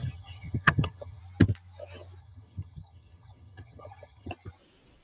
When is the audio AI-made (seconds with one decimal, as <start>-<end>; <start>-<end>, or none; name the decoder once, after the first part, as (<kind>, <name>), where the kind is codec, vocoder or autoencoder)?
0.0-1.2 (vocoder, HiFi-GAN); 2.2-4.3